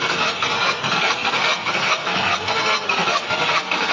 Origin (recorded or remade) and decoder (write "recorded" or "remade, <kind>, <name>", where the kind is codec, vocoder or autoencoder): remade, codec, SNAC